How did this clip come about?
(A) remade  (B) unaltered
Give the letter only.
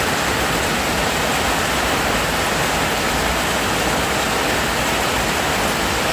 B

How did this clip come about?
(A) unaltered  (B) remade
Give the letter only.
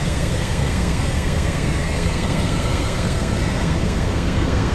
B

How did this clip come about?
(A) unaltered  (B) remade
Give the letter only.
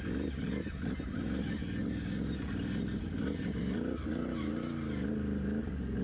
B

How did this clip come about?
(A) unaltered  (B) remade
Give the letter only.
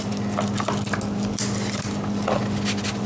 A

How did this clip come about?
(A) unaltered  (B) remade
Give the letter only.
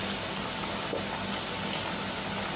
A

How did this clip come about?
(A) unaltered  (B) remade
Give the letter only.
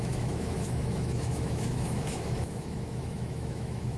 B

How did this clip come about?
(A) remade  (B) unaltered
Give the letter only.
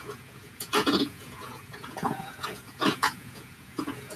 A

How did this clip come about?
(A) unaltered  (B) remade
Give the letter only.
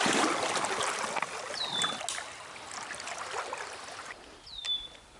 A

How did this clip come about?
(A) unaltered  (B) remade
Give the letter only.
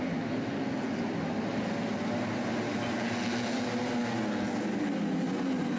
A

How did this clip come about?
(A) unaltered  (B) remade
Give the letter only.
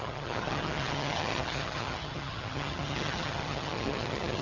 B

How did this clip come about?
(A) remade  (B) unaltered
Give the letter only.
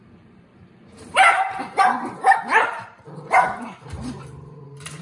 A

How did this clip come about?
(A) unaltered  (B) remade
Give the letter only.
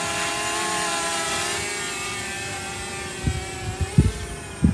A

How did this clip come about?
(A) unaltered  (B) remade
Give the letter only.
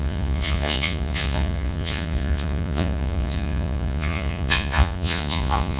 B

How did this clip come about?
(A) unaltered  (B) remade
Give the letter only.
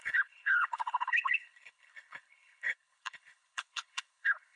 B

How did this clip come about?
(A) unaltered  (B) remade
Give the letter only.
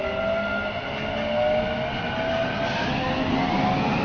A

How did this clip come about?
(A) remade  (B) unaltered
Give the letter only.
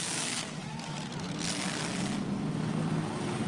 B